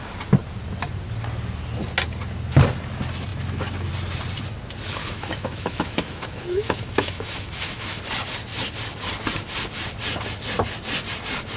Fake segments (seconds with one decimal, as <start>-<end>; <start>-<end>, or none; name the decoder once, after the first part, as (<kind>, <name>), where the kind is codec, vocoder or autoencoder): 5.0-8.0 (autoencoder, DAC-VAE)